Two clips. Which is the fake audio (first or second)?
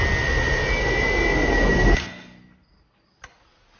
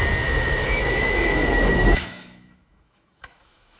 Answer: second